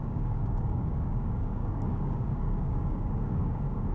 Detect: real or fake fake